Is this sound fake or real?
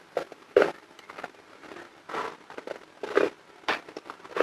real